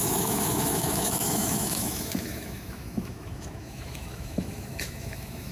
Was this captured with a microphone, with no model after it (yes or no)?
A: no